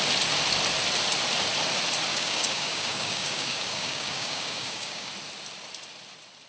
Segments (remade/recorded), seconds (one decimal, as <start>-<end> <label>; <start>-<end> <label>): 0.0-2.1 recorded; 2.1-5.1 remade; 5.1-6.5 recorded